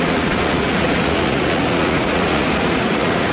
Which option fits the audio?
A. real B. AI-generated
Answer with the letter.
B